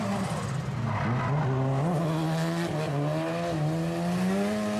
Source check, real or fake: real